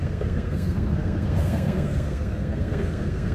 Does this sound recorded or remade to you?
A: remade